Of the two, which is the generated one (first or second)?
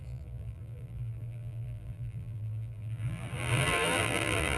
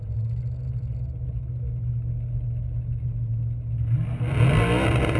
first